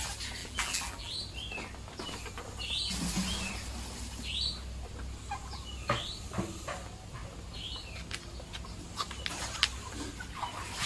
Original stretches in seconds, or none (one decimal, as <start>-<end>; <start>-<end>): 0.0-0.4; 1.1-10.9